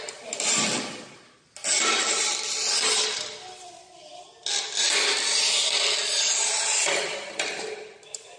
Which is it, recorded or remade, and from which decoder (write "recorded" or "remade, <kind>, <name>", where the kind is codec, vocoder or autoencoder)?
recorded